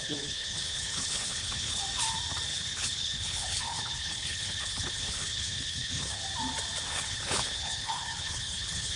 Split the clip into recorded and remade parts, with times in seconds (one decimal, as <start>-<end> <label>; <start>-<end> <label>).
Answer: 0.0-1.8 remade; 1.8-2.5 recorded; 2.5-6.2 remade; 6.2-6.9 recorded; 6.9-9.0 remade